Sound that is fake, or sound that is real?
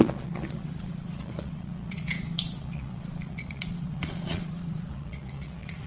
fake